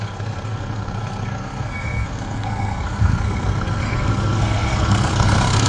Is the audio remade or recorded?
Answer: remade